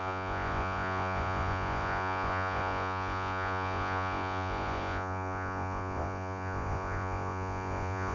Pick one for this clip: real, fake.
fake